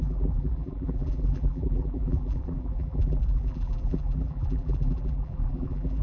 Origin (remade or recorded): remade